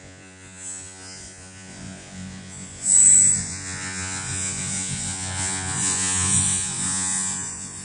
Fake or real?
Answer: fake